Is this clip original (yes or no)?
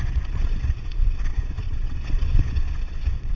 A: no